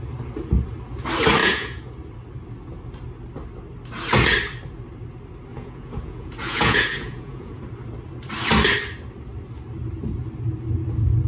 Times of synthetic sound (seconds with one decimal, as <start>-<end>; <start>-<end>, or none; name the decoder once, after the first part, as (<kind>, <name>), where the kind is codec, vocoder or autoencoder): 1.4-1.9 (vocoder, Vocos); 5.5-7.6